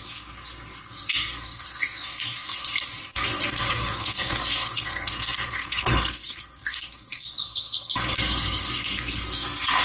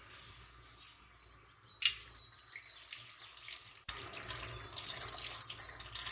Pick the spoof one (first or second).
first